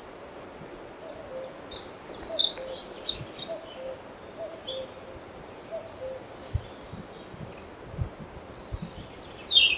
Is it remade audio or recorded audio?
recorded